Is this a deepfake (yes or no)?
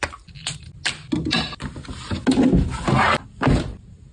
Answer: no